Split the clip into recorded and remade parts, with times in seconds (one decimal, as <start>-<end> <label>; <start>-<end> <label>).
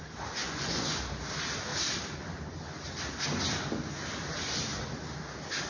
0.0-0.4 recorded; 0.4-1.0 remade; 1.0-5.7 recorded